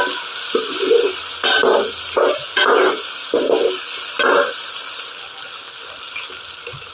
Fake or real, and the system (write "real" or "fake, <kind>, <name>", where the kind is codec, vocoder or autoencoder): real